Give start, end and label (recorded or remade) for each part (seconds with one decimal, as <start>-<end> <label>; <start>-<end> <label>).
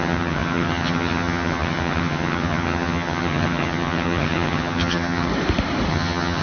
0.0-5.3 remade; 5.3-5.9 recorded; 5.9-6.4 remade